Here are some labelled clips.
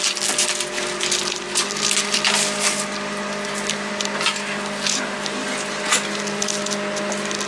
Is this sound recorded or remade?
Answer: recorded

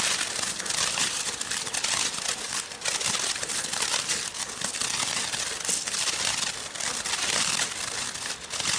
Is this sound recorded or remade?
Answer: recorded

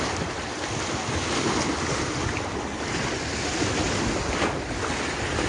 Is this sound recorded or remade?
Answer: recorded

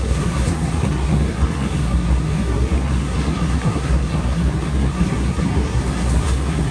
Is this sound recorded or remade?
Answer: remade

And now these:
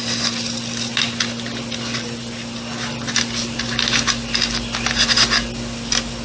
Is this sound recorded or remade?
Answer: recorded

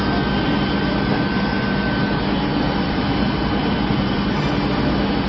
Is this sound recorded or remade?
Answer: recorded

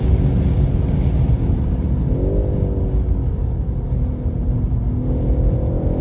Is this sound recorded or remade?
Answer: recorded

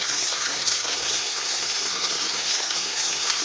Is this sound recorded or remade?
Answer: remade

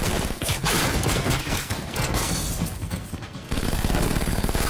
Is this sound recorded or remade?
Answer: remade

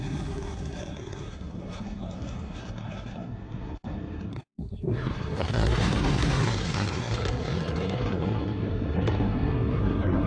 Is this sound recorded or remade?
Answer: remade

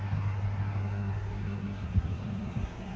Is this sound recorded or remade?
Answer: remade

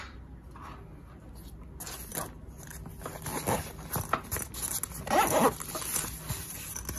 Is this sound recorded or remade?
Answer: recorded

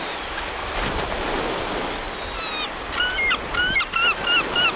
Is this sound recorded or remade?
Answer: recorded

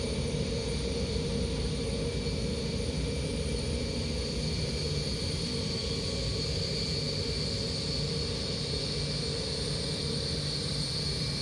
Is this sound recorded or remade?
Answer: recorded